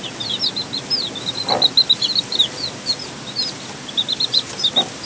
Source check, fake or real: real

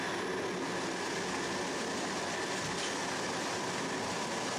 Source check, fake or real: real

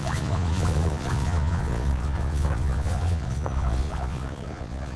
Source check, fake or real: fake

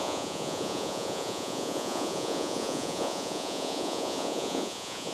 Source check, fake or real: fake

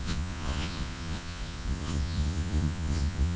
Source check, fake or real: fake